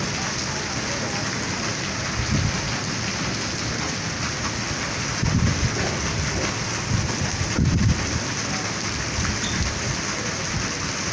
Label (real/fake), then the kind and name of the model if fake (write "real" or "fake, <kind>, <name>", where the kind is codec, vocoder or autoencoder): real